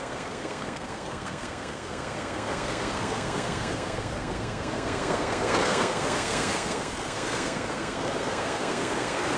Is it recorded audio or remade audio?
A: remade